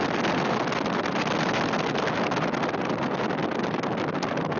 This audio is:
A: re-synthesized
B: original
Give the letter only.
B